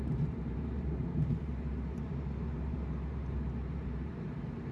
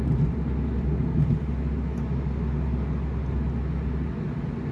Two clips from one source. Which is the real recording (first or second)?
second